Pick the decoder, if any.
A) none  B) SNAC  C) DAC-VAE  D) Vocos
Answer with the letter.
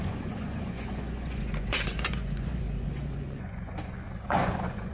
D